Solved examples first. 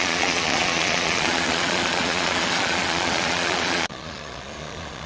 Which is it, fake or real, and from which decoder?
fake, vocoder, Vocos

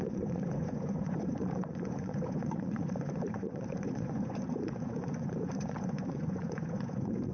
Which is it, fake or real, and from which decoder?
fake, vocoder, Vocos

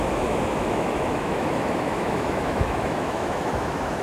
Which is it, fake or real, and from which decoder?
fake, autoencoder, DAC-VAE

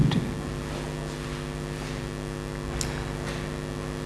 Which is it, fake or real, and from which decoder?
real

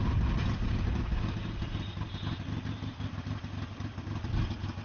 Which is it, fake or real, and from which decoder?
real